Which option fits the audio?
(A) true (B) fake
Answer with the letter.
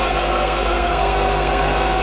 B